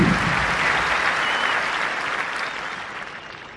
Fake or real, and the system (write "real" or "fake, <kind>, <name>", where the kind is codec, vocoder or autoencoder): real